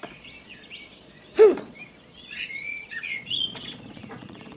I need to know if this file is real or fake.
fake